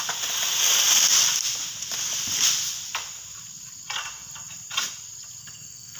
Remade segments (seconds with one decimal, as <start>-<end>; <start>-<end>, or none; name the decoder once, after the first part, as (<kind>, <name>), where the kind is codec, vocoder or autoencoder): 5.4-6.0 (codec, SNAC)